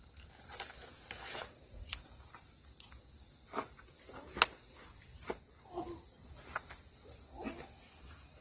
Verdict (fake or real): real